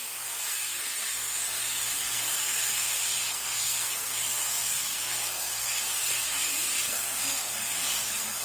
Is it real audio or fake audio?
fake